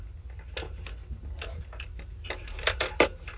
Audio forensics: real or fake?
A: real